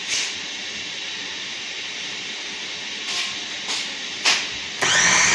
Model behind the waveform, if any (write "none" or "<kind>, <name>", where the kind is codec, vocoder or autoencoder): none